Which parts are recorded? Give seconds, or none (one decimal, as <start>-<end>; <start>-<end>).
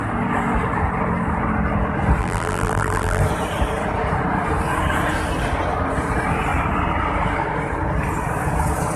0.0-2.2; 3.2-9.0